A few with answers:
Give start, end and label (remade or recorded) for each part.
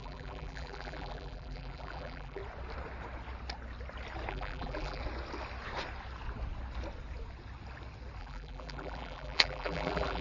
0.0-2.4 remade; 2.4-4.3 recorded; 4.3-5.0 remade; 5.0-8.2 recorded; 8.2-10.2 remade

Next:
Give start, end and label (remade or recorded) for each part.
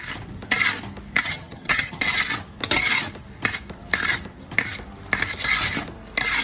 0.0-1.2 recorded; 1.2-2.0 remade; 2.0-6.4 recorded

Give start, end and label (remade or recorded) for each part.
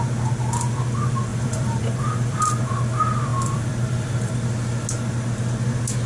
0.0-1.3 recorded; 1.3-2.7 remade; 2.7-3.3 recorded; 3.3-4.3 remade; 4.3-6.1 recorded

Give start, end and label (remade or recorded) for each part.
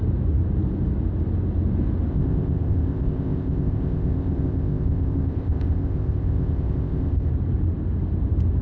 0.0-2.1 recorded; 2.1-7.3 remade; 7.3-8.6 recorded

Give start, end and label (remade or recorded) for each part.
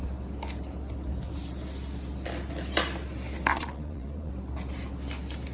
0.0-3.5 recorded; 3.5-4.3 remade; 4.3-5.5 recorded